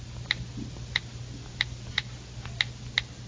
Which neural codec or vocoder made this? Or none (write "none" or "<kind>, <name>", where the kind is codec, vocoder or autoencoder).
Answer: none